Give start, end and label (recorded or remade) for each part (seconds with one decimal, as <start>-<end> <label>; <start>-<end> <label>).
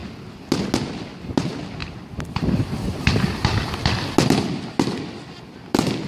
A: 0.0-6.1 recorded